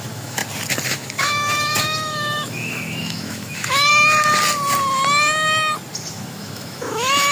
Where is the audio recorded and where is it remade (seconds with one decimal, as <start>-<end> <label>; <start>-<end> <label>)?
0.0-0.4 remade; 0.4-0.9 recorded; 0.9-3.9 remade; 3.9-6.1 recorded; 6.1-7.3 remade